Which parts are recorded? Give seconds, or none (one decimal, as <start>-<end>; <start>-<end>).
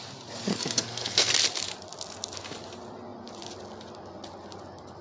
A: 0.0-0.5; 1.3-5.0